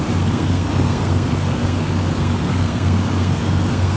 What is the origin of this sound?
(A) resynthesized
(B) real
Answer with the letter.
A